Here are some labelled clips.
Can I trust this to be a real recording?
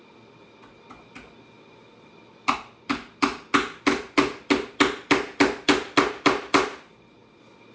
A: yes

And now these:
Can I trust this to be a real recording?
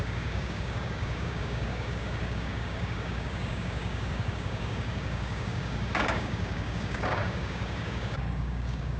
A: no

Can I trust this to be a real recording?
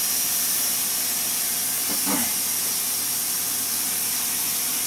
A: yes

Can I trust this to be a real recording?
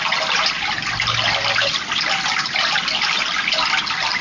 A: yes